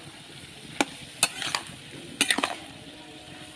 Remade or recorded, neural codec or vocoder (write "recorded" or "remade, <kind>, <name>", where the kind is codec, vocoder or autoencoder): recorded